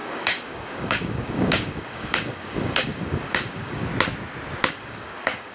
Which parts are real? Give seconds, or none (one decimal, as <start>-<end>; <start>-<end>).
3.9-4.7